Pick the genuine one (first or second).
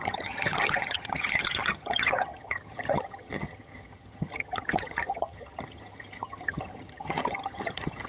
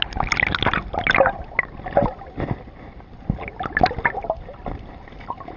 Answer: second